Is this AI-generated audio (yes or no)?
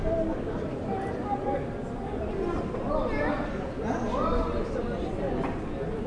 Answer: no